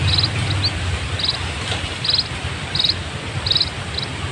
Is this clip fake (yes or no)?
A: no